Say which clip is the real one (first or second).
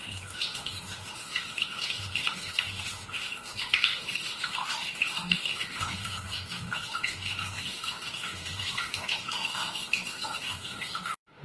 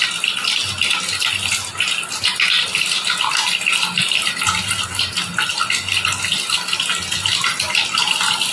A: second